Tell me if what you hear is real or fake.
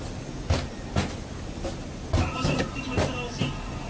real